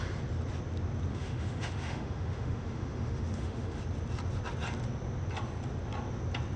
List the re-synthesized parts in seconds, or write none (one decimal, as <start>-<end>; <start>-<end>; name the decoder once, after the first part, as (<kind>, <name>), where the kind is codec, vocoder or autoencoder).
1.1-3.8 (autoencoder, DAC-VAE)